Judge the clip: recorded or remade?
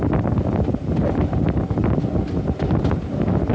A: recorded